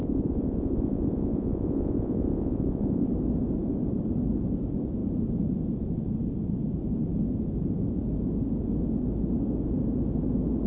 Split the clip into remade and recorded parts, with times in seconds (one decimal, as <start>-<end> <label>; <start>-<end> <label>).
0.0-3.1 remade; 3.1-10.7 recorded